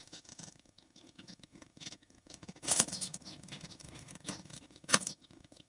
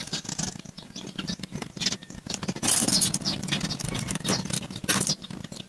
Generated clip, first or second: first